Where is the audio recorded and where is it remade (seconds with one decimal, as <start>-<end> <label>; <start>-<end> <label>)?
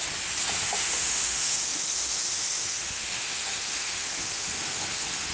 0.0-0.6 recorded; 0.6-5.3 remade